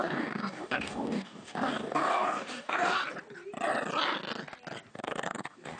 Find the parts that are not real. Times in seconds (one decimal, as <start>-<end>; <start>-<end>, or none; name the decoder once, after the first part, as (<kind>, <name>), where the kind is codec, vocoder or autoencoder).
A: 0.0-3.0 (codec, DAC); 4.9-5.8